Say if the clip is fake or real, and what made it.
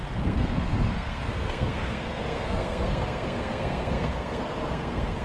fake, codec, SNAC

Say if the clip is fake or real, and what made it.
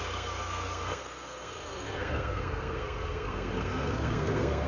fake, codec, SNAC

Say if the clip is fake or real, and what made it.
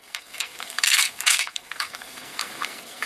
fake, codec, SNAC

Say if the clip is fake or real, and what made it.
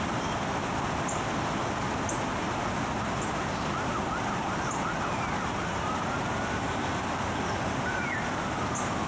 real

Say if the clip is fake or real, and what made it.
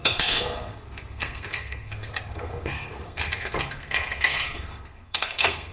fake, codec, SNAC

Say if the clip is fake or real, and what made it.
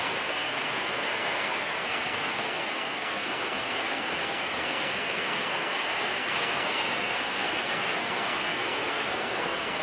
fake, codec, SNAC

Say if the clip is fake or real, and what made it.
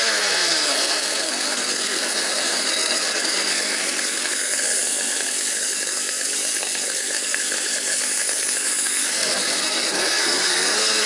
fake, codec, SNAC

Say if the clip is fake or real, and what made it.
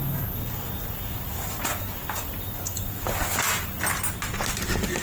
real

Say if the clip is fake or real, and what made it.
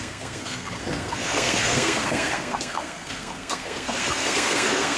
fake, codec, SNAC